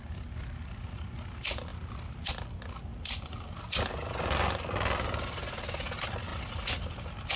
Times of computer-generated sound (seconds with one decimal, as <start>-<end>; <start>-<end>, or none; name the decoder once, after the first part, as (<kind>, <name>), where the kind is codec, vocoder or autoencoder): none